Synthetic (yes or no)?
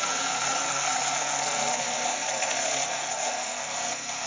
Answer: yes